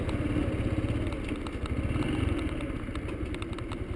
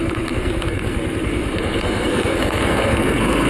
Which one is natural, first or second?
first